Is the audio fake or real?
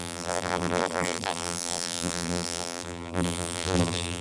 fake